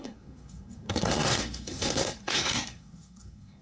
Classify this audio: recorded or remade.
remade